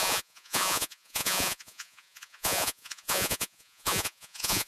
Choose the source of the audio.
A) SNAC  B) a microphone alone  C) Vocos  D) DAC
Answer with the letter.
C